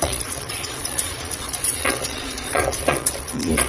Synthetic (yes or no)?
yes